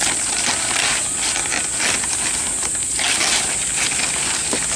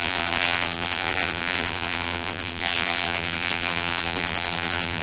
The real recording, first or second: first